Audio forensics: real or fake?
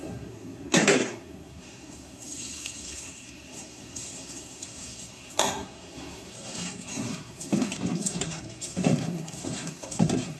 fake